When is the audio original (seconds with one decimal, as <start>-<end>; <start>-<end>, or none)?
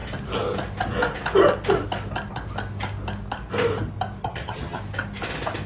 0.0-4.2; 4.8-5.7